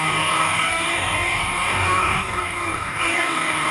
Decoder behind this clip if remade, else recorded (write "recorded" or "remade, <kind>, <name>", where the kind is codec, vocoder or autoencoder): remade, codec, DAC